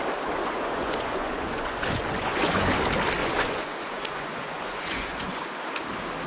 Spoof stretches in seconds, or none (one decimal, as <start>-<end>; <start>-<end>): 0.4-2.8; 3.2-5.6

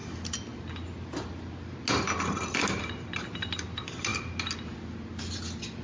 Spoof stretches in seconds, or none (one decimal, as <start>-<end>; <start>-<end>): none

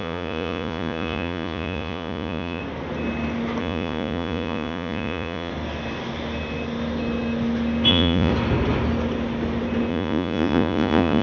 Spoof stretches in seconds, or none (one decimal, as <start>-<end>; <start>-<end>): 0.0-2.6; 3.6-5.5; 7.9-8.3; 9.9-11.2

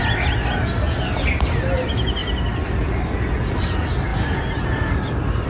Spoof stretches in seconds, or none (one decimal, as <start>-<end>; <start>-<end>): none

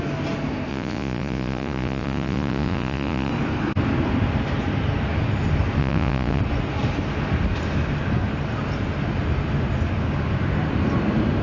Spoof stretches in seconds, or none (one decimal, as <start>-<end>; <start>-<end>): 0.7-3.3; 5.8-6.4

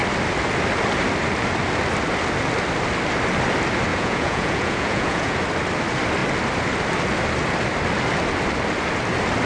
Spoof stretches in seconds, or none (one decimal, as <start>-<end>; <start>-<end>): 3.9-5.4

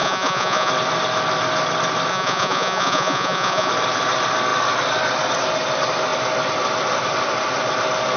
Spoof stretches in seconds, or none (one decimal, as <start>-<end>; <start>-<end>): 0.0-0.7; 2.1-3.7